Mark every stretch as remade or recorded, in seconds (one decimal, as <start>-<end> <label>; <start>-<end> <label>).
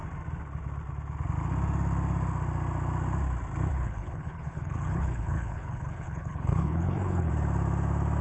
0.0-3.7 recorded; 3.7-7.3 remade; 7.3-8.2 recorded